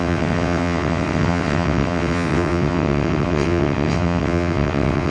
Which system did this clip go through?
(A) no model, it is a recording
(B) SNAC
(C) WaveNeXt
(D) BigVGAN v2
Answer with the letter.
C